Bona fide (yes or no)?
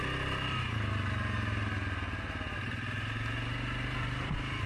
yes